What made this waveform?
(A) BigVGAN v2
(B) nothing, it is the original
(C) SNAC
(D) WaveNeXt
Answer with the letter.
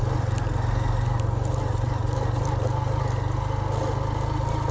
B